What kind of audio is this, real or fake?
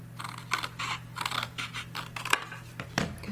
real